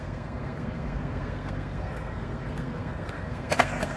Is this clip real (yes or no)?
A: no